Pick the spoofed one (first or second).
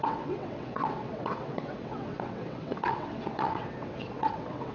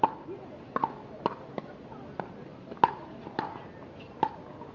first